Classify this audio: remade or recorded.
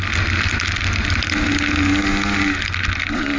recorded